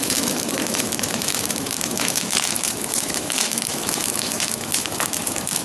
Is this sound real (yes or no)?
no